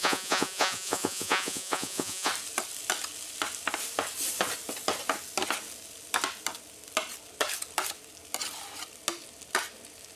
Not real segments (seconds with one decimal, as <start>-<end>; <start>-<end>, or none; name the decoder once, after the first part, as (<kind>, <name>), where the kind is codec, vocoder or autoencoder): 0.0-2.3 (vocoder, Vocos)